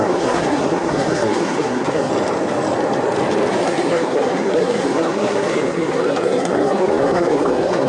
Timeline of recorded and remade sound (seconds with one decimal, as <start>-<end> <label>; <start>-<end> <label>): 0.0-2.1 remade; 2.1-3.5 recorded; 3.5-7.9 remade